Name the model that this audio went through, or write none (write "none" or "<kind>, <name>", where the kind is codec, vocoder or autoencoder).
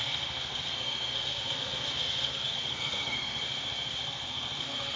codec, SNAC